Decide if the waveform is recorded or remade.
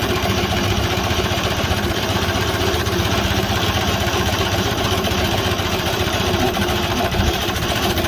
remade